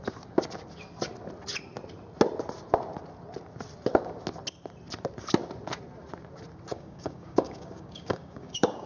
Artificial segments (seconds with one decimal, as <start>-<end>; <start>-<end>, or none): 6.7-8.9